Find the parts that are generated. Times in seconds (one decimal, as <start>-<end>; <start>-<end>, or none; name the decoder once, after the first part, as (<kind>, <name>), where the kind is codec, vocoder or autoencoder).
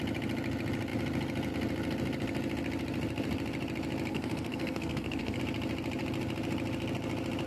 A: 4.1-5.4 (codec, SNAC)